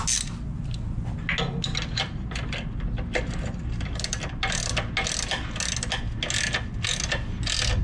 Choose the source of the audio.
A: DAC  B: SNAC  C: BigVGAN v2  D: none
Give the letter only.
D